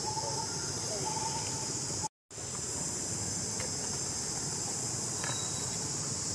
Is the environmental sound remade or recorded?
recorded